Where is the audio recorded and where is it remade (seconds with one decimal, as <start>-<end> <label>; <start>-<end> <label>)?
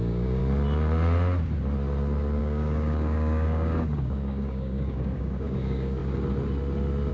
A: 0.0-0.4 remade; 0.4-2.4 recorded; 2.4-6.0 remade; 6.0-7.1 recorded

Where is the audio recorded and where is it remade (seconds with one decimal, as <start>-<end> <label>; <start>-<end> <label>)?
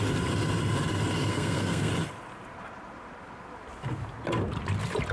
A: 0.0-1.3 recorded; 1.3-1.9 remade; 1.9-5.1 recorded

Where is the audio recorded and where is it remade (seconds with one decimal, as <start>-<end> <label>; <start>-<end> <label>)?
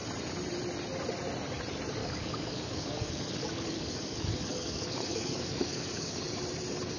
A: 0.0-2.0 recorded; 2.0-6.2 remade; 6.2-7.0 recorded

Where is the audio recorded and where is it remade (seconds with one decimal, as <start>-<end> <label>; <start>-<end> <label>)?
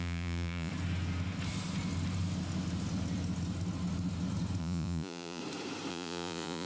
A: 0.0-0.7 remade; 0.7-4.6 recorded; 4.6-5.4 remade; 5.4-5.9 recorded; 5.9-6.7 remade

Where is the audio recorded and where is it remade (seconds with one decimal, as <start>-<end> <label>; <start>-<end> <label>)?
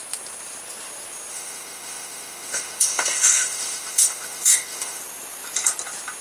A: 0.0-1.3 recorded; 1.3-5.0 remade; 5.0-6.2 recorded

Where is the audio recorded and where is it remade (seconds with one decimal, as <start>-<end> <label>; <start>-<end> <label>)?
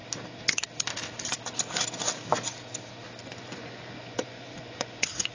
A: 0.0-3.2 recorded; 3.2-5.3 remade